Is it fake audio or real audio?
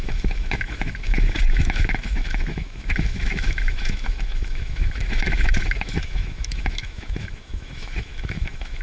fake